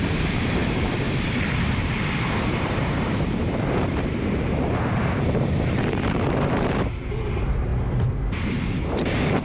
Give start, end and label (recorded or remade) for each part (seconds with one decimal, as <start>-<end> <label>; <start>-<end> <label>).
0.0-7.7 remade; 7.7-8.5 recorded; 8.5-9.4 remade